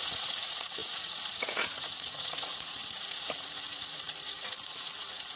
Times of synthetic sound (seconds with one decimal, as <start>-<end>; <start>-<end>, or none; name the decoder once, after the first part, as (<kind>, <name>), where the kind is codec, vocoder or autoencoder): 0.0-5.4 (vocoder, Vocos)